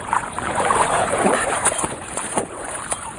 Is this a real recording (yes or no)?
no